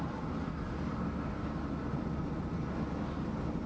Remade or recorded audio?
recorded